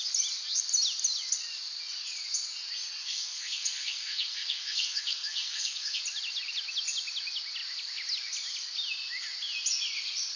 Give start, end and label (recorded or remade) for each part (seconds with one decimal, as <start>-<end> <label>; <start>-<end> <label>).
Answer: 0.0-3.0 recorded; 3.0-6.0 remade; 6.0-10.4 recorded